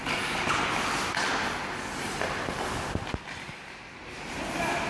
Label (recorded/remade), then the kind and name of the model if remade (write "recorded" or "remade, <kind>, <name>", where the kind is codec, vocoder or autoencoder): recorded